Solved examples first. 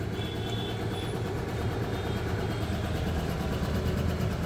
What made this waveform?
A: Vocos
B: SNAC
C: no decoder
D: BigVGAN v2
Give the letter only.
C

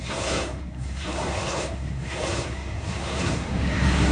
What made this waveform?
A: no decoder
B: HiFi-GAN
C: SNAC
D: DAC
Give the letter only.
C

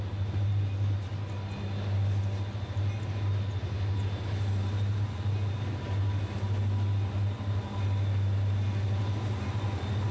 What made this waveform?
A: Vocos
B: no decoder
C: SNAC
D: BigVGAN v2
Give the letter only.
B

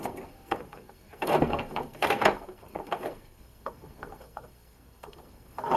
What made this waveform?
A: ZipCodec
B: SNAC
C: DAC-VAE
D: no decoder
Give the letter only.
B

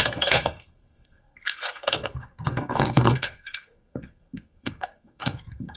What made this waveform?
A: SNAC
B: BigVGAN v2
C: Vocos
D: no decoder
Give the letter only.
A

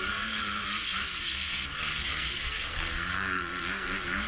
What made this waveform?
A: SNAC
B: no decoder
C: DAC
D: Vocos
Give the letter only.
A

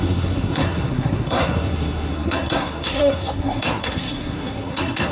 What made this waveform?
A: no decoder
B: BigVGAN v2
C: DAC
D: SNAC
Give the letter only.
D